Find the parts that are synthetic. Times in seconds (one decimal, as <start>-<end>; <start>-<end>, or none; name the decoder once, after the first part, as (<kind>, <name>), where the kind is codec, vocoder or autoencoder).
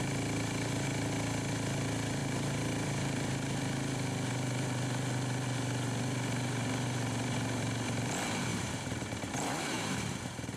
2.2-3.6 (vocoder, BigVGAN v2); 8.5-10.6